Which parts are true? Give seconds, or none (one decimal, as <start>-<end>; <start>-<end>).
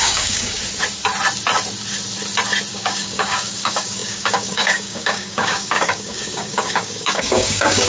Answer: 0.6-2.7